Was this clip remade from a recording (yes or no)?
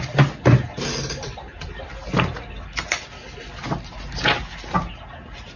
no